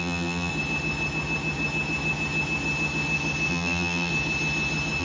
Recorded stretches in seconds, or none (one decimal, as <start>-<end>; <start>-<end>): 0.5-3.5; 4.1-5.0